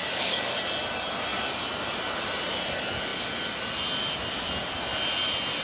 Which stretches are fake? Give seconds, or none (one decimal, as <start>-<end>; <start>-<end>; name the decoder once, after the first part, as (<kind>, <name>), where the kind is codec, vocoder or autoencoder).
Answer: 0.0-0.6 (codec, DAC)